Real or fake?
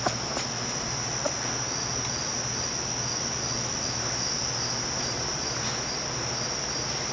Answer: real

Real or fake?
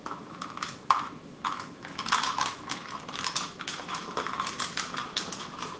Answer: fake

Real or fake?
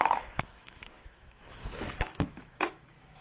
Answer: fake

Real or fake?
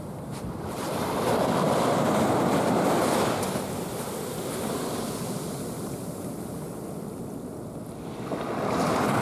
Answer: real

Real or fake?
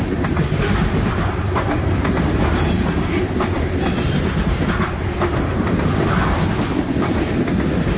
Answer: real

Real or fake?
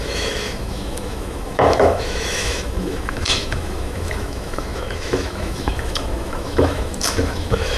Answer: fake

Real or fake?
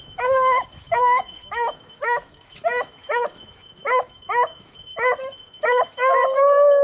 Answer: fake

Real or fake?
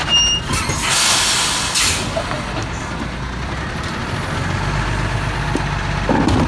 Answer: real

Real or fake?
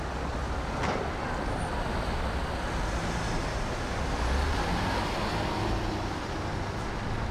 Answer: real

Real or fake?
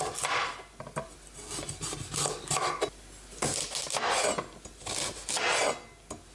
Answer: real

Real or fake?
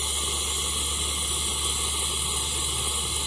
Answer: real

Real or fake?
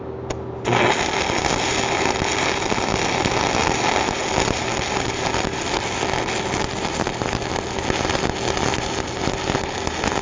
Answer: real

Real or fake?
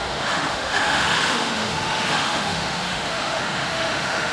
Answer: fake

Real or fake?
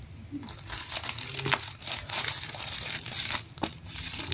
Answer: real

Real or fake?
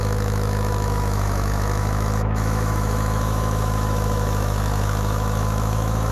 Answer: fake